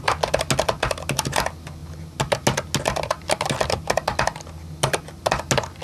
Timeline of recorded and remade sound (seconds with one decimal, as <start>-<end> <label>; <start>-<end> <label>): 0.0-5.8 recorded